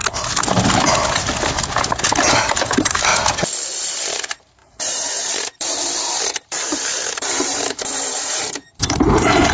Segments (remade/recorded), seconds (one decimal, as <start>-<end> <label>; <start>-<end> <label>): 0.0-2.4 recorded; 2.4-3.1 remade; 3.1-3.8 recorded; 3.8-9.5 remade